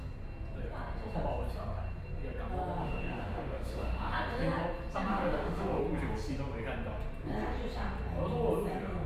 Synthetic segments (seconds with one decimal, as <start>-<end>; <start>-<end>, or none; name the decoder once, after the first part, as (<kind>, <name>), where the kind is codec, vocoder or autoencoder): 2.8-4.1 (autoencoder, DAC-VAE); 5.1-5.8